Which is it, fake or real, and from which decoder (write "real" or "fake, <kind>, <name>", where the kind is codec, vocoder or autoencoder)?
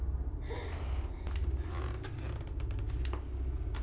real